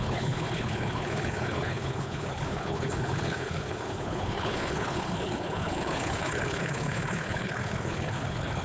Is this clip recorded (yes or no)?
no